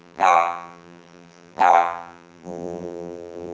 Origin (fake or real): fake